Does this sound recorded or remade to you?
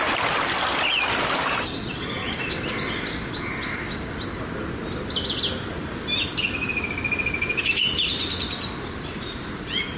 recorded